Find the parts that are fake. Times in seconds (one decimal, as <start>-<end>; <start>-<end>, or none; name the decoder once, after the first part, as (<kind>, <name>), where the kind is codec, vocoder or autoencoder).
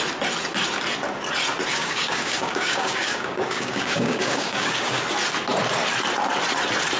1.7-5.0 (codec, DAC)